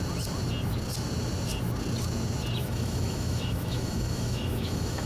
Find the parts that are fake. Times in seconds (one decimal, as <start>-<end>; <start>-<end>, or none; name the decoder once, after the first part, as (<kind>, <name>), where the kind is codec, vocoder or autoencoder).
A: 2.6-5.1 (autoencoder, DAC-VAE)